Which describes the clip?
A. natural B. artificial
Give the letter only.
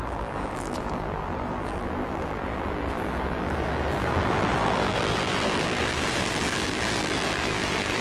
B